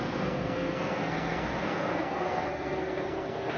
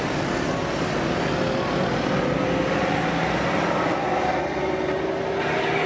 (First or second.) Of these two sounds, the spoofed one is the first